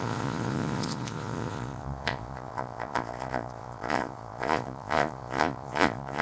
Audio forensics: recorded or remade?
remade